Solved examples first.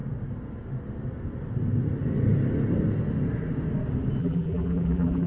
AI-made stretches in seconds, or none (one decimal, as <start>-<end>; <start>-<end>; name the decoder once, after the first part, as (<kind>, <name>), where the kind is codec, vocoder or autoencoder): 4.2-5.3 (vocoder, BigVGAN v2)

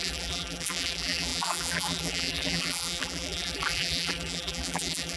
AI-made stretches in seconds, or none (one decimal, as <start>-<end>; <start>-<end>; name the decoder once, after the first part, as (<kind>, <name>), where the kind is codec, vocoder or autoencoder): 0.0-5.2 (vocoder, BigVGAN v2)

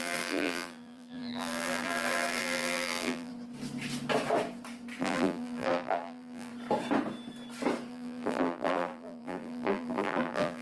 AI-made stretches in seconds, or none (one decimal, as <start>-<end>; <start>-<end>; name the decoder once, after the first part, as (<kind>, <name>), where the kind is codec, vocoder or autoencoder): 0.0-3.3 (vocoder, BigVGAN v2); 5.0-6.5; 7.9-10.6

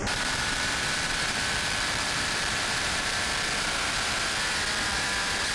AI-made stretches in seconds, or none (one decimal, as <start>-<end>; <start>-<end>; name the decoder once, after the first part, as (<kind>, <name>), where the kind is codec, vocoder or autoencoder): 0.0-3.3 (vocoder, BigVGAN v2)